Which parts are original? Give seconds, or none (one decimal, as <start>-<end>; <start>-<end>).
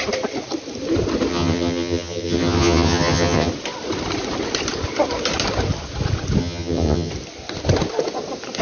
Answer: 0.0-1.3; 3.5-6.4; 7.1-8.6